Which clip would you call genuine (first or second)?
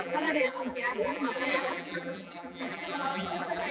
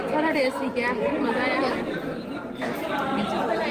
second